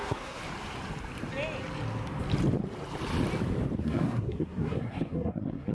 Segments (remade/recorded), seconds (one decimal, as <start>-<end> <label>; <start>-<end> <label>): 0.0-0.4 remade; 0.4-3.8 recorded; 3.8-5.7 remade